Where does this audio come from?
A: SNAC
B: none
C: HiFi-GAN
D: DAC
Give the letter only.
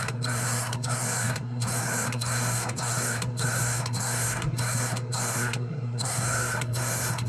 A